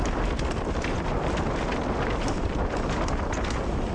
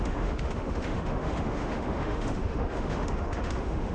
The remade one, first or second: second